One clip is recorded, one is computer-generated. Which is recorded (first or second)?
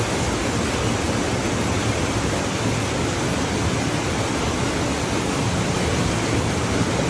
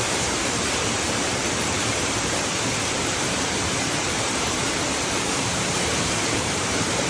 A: first